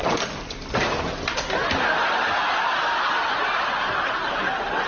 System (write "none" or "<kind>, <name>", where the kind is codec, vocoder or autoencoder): none